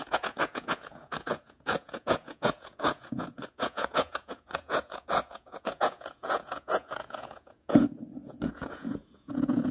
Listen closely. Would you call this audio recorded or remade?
remade